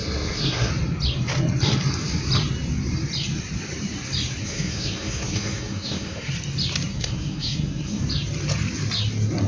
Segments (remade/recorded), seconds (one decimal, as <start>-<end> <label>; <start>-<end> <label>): 0.0-0.7 remade; 0.7-4.4 recorded; 4.4-6.3 remade; 6.3-6.9 recorded; 6.9-8.0 remade; 8.0-9.5 recorded